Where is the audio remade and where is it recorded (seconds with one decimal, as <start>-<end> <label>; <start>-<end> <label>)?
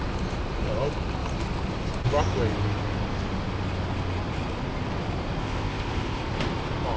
0.0-5.4 recorded; 5.4-6.2 remade; 6.2-7.0 recorded